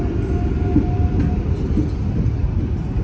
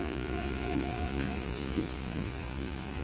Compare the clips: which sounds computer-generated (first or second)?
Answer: second